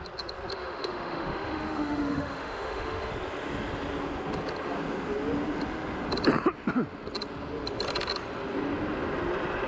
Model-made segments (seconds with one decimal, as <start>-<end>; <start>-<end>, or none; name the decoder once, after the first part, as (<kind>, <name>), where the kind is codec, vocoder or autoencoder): 0.5-3.1 (autoencoder, DAC-VAE)